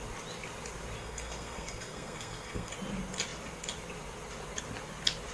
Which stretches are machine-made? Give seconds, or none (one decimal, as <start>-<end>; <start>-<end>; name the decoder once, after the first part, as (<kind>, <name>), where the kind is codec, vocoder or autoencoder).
1.0-2.7 (codec, SNAC)